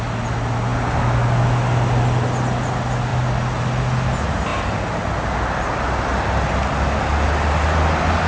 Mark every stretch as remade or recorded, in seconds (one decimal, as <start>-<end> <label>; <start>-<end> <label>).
0.0-8.3 recorded